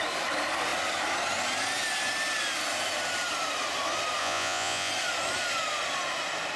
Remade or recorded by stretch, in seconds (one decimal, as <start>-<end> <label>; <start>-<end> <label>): 0.0-4.2 recorded; 4.2-4.9 remade; 4.9-6.6 recorded